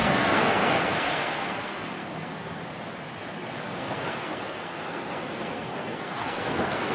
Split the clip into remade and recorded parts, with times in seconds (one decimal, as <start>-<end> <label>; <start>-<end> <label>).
0.0-2.6 remade; 2.6-3.6 recorded; 3.6-6.9 remade